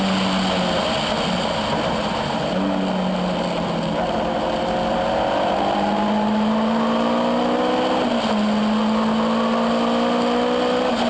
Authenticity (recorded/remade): recorded